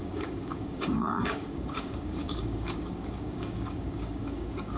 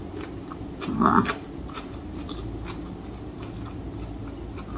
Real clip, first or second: second